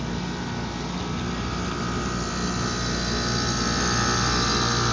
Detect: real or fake real